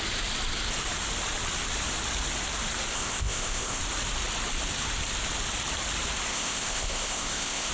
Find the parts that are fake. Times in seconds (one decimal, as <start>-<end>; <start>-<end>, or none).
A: 2.9-3.8; 6.3-7.7